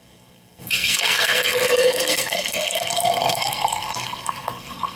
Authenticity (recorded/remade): remade